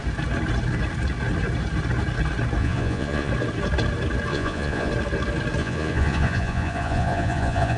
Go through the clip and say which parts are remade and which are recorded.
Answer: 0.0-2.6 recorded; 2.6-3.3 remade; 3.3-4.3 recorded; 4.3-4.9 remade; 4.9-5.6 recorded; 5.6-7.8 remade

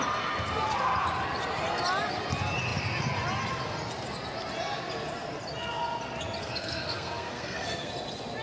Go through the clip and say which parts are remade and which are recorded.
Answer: 0.0-6.4 recorded; 6.4-7.9 remade; 7.9-8.4 recorded